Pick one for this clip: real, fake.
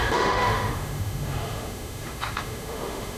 fake